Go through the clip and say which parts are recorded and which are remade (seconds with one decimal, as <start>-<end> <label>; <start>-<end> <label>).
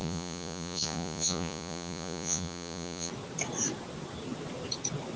0.0-3.1 remade; 3.1-5.2 recorded